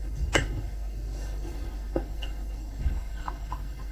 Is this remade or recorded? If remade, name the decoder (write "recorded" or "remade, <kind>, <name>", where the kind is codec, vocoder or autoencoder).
remade, codec, SNAC